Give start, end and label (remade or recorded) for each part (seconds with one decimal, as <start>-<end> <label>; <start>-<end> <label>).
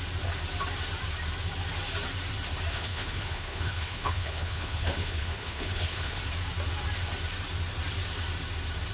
0.0-2.7 recorded; 2.7-6.2 remade; 6.2-8.9 recorded